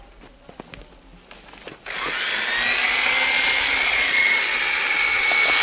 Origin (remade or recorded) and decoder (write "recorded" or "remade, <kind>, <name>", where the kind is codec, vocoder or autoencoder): recorded